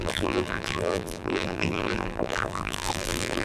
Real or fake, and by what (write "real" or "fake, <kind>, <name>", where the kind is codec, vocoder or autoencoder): fake, vocoder, BigVGAN v2